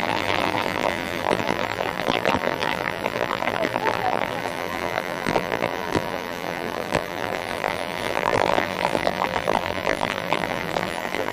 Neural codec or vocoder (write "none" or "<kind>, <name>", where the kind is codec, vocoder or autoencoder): vocoder, BigVGAN v2